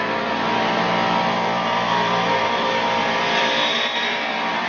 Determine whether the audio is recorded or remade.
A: remade